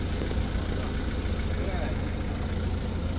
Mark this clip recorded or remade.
recorded